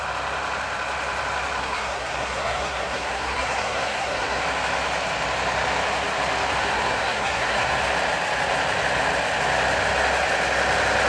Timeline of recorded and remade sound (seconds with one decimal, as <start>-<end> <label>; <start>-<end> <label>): 0.0-1.6 recorded; 1.6-4.4 remade; 4.4-6.6 recorded; 6.6-7.8 remade; 7.8-11.1 recorded